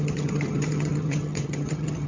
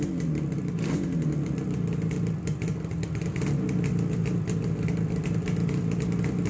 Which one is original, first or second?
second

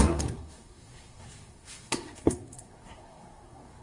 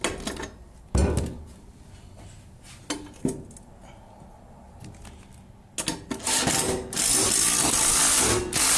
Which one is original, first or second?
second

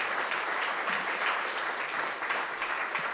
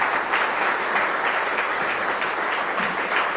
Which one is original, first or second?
second